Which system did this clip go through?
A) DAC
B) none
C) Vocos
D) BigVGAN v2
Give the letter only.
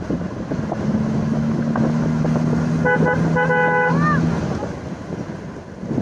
B